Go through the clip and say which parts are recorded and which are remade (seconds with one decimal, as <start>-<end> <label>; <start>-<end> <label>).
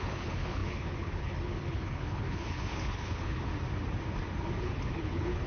0.0-3.5 remade; 3.5-4.6 recorded; 4.6-5.5 remade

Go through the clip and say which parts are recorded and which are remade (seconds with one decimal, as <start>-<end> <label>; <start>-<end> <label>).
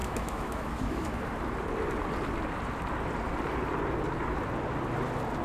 0.0-1.3 remade; 1.3-5.4 recorded